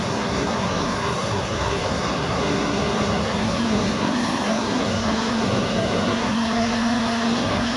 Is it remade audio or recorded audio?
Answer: remade